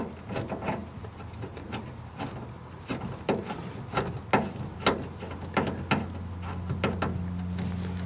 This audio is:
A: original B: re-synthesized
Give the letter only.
A